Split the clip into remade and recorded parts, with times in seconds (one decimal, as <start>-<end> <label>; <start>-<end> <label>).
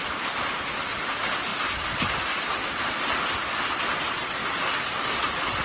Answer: 0.0-5.6 recorded